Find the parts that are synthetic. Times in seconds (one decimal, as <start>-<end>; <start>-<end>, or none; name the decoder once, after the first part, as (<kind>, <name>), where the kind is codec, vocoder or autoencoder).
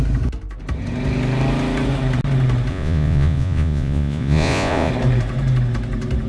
2.7-4.9 (vocoder, Vocos)